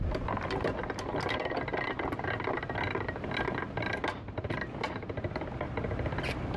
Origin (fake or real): real